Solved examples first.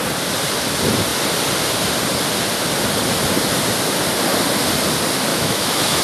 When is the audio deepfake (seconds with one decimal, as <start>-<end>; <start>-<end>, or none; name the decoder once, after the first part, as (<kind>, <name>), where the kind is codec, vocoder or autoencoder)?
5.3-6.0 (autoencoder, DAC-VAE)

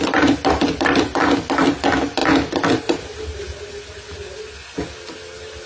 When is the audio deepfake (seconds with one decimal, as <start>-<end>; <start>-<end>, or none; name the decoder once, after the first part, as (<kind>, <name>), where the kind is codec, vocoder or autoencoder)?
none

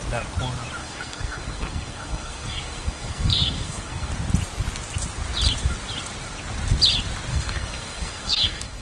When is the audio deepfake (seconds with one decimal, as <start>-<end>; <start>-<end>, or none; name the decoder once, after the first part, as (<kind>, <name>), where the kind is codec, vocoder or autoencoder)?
0.8-4.1 (codec, SNAC); 7.3-8.8